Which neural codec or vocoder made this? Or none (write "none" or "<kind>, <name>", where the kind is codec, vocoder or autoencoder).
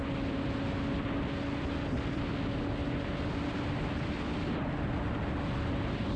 none